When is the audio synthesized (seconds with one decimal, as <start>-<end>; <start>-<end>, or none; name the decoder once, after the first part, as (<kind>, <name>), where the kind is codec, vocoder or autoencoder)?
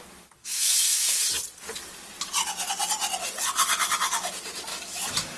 0.4-1.3 (autoencoder, DAC-VAE); 4.7-5.4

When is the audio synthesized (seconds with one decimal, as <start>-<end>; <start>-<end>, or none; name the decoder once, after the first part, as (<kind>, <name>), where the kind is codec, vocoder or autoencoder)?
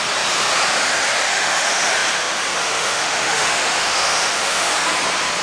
1.3-1.9 (autoencoder, DAC-VAE); 2.6-4.7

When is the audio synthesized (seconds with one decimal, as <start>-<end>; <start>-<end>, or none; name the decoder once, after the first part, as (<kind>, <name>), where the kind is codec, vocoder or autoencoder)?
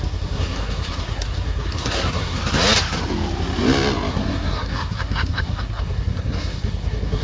0.0-2.4 (codec, SNAC); 4.1-7.2